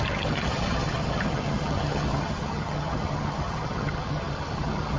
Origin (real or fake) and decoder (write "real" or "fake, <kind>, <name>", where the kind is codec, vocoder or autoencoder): fake, vocoder, HiFi-GAN